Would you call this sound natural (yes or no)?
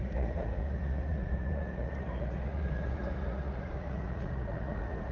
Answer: no